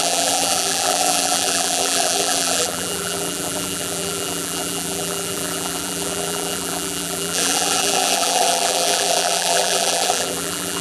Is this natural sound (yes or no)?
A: no